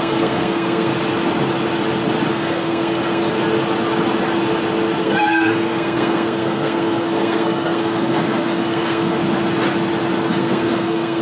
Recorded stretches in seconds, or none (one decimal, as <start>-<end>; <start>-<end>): 0.9-2.3; 3.2-5.0; 9.2-10.3